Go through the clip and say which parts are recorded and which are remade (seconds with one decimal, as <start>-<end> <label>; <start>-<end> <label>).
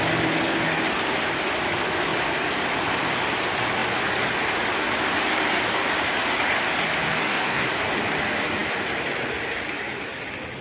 0.0-7.2 recorded; 7.2-7.7 remade; 7.7-10.6 recorded